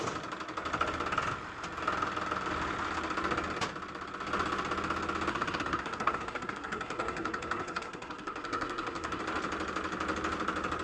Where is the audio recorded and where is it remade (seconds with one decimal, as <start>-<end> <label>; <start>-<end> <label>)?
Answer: 0.0-5.3 recorded; 5.3-9.2 remade; 9.2-10.8 recorded